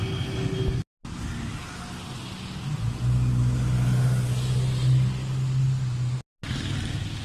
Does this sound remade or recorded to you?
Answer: recorded